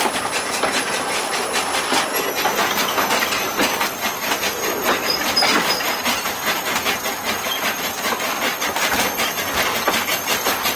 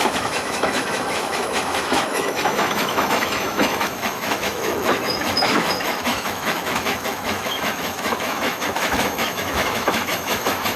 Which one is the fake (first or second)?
second